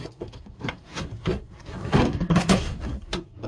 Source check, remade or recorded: remade